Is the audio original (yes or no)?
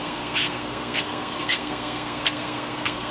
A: no